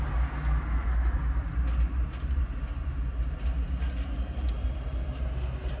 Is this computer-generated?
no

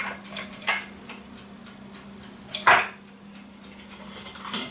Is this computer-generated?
no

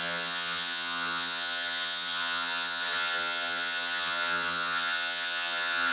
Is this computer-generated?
yes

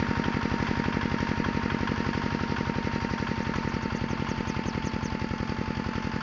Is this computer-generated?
no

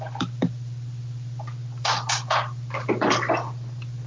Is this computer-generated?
no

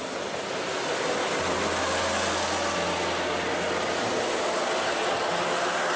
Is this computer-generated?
no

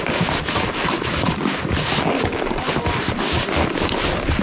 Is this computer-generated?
no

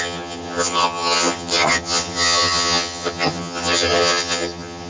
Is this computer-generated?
yes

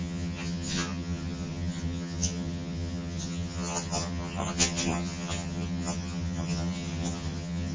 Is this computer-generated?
yes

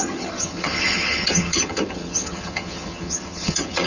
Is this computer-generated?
yes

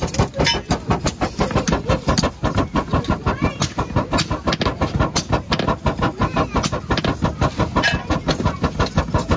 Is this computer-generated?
no